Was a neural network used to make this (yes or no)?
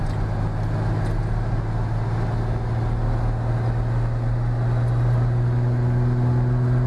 no